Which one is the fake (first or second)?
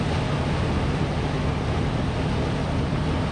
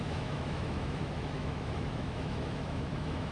second